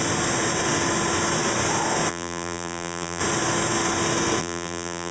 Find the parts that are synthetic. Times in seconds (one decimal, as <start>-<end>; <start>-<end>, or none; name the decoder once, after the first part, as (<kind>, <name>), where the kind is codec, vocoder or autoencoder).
2.1-3.2 (vocoder, BigVGAN v2); 4.4-5.1